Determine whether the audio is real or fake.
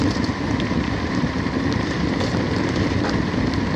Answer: real